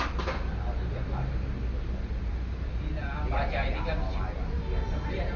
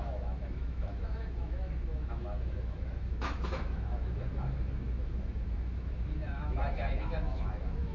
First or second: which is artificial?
second